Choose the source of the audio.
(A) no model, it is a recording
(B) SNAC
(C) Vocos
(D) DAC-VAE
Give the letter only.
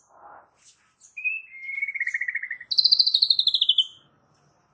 A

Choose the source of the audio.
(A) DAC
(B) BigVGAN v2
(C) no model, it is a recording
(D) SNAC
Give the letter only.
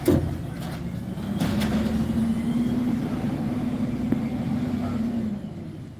C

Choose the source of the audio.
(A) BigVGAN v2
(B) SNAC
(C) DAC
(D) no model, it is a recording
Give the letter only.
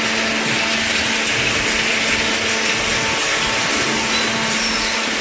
D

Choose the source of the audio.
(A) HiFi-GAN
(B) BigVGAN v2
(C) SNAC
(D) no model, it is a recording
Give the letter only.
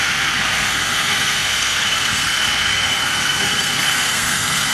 C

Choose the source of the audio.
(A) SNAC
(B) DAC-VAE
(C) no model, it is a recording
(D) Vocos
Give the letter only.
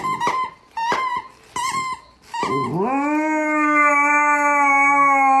C